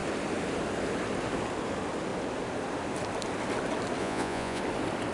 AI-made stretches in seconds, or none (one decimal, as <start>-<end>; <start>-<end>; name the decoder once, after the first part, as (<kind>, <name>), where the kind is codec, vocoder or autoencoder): 4.0-4.6 (vocoder, Vocos)